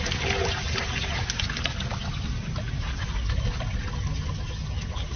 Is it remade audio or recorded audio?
recorded